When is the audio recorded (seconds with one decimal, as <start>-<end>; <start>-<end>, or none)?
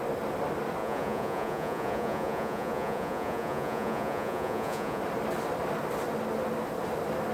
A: 0.0-0.8; 5.0-7.3